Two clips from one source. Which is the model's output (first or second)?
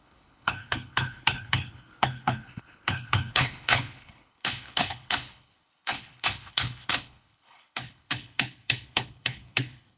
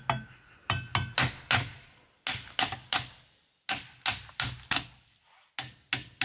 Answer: first